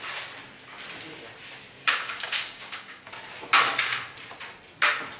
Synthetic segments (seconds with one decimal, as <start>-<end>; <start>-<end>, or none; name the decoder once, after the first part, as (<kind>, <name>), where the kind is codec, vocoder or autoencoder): 1.8-3.1 (codec, DAC)